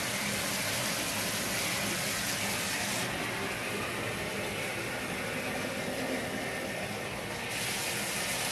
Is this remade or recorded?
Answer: recorded